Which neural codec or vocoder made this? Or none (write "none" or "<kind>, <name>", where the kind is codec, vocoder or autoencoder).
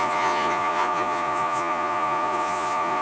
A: vocoder, Vocos